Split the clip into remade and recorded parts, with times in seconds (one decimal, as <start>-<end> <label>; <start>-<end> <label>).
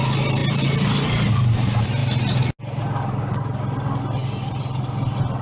0.0-5.4 recorded